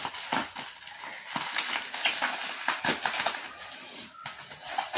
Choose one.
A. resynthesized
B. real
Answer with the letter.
B